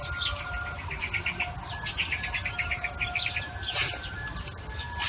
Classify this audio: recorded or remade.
recorded